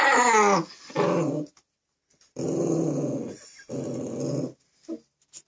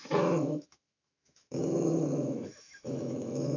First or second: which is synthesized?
second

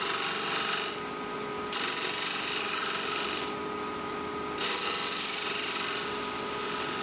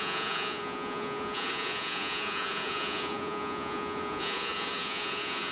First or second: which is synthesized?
second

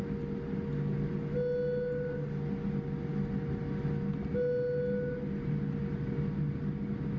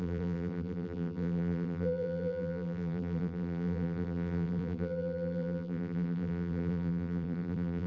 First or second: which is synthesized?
second